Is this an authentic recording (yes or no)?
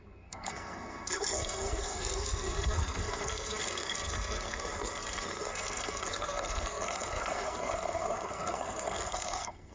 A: no